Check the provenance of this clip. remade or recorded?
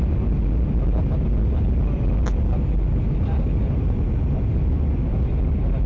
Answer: recorded